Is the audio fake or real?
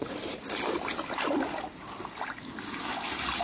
real